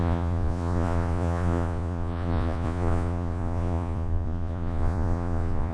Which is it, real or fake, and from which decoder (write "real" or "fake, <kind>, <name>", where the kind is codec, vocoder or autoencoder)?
fake, vocoder, Vocos